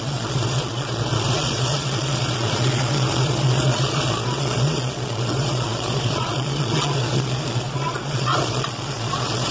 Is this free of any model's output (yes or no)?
no